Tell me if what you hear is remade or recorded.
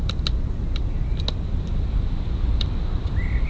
recorded